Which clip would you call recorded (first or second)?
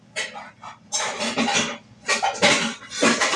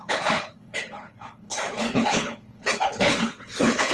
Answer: first